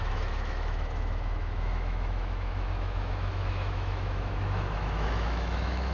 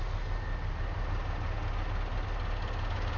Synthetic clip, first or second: first